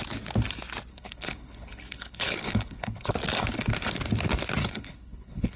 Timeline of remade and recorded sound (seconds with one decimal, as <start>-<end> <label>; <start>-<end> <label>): 0.0-0.9 recorded; 0.9-3.1 remade; 3.1-4.6 recorded; 4.6-5.6 remade